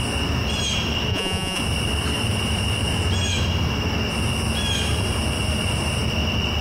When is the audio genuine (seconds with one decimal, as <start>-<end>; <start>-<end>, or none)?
0.0-1.1; 1.6-6.6